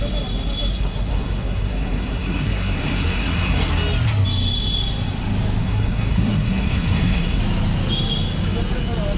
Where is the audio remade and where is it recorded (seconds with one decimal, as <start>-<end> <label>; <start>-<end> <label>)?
0.0-0.7 recorded; 0.7-3.7 remade; 3.7-5.6 recorded; 5.6-7.4 remade; 7.4-9.2 recorded